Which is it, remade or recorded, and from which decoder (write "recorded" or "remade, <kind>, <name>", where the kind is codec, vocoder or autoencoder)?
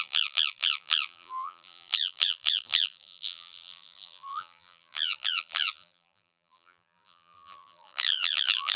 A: remade, vocoder, BigVGAN v2